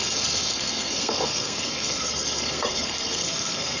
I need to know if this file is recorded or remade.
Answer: remade